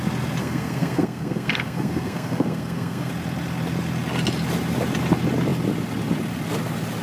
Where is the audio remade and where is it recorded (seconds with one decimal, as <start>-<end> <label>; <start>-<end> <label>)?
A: 0.0-0.4 recorded; 0.4-3.1 remade; 3.1-7.0 recorded